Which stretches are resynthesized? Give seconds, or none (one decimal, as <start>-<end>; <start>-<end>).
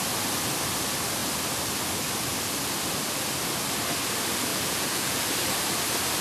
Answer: 4.5-5.2